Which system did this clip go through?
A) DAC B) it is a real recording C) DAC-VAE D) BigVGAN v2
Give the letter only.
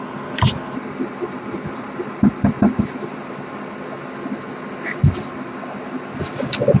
B